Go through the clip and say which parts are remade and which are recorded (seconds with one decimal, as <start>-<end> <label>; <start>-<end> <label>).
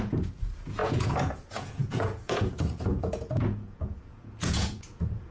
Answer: 0.0-5.3 remade